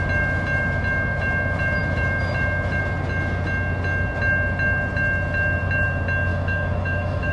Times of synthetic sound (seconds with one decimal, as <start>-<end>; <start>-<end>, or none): 6.3-7.3

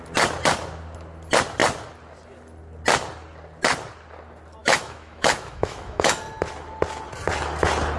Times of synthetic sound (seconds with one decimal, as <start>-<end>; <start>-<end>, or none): 4.6-6.2

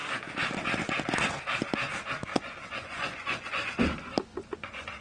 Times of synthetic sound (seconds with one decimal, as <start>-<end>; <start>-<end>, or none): 2.3-3.7; 4.3-5.0

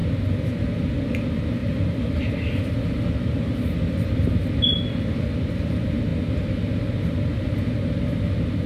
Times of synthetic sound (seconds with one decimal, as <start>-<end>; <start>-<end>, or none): 1.6-2.6

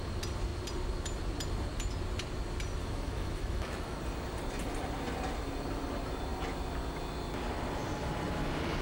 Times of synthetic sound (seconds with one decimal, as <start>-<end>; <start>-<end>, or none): 2.8-4.0

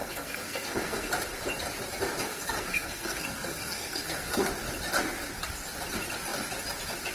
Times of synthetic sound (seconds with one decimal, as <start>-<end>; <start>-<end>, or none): 0.0-1.1; 2.2-4.5

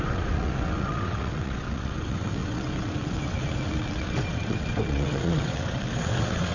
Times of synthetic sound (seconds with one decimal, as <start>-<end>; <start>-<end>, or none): 0.0-6.5

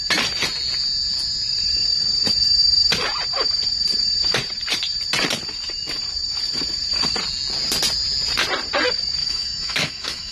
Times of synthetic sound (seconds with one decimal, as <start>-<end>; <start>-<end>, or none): 9.2-10.3